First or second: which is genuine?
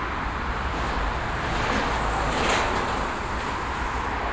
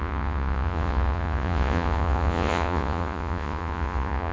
first